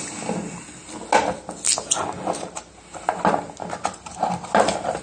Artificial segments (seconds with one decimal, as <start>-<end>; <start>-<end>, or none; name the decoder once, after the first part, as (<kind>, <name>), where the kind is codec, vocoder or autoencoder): none